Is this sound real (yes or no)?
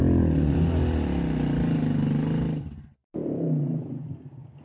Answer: yes